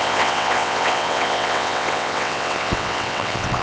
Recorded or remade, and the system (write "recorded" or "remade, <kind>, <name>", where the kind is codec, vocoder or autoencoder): remade, vocoder, WaveNeXt